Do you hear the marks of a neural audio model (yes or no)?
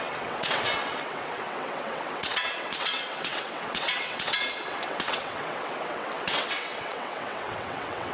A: yes